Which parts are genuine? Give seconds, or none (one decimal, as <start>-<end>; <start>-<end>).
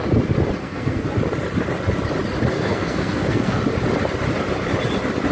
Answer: 0.0-0.6; 1.1-2.5; 3.6-5.3